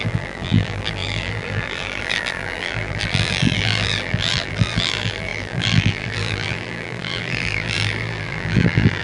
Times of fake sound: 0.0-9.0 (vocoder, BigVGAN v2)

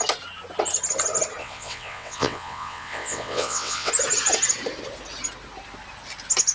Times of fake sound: 1.4-3.9 (vocoder, WaveNeXt)

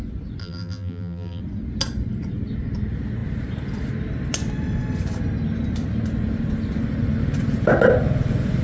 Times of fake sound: 0.4-1.4 (vocoder, BigVGAN v2)

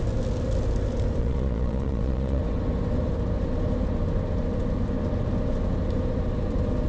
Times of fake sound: 1.2-2.4 (vocoder, Vocos)